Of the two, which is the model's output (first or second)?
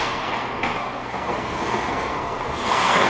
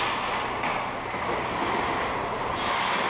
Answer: first